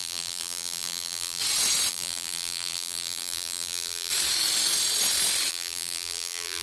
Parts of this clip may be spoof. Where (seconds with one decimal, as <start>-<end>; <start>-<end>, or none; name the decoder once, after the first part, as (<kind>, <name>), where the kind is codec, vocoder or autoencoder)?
0.0-1.4 (vocoder, BigVGAN v2); 1.9-4.1; 5.5-6.6